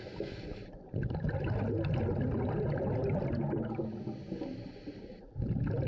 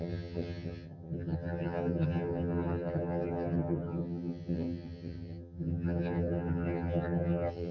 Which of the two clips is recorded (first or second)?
first